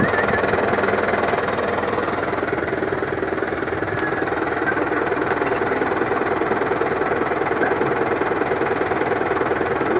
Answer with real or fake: real